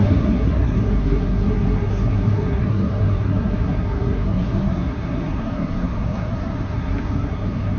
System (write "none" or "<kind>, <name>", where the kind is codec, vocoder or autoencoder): codec, SNAC